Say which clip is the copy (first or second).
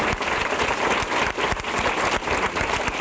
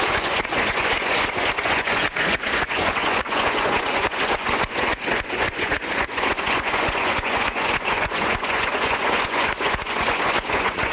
second